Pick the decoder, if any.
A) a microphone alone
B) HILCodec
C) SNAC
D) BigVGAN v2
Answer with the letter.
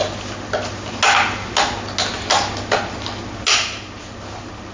A